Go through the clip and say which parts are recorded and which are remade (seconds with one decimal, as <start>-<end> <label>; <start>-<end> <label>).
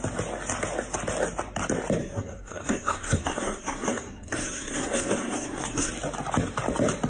0.0-2.0 recorded; 2.0-5.9 remade; 5.9-7.1 recorded